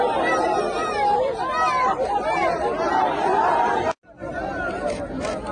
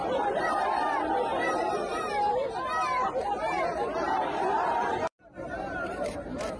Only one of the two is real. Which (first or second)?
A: first